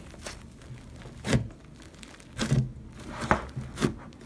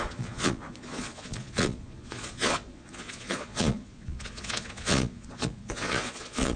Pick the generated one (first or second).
second